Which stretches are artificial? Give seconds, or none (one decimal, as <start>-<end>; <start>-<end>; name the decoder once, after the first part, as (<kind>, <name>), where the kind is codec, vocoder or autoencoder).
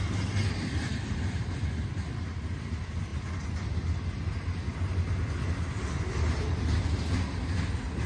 0.9-2.2 (vocoder, BigVGAN v2); 3.1-3.8